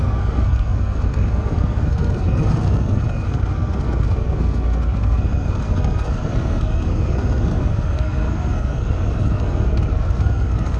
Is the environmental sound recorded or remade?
remade